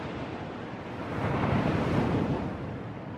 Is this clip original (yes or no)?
no